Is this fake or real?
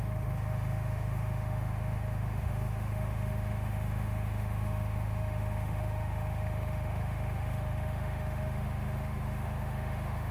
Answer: fake